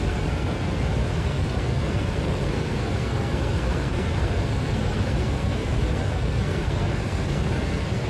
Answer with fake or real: fake